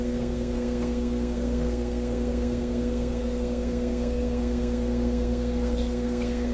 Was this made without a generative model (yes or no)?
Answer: no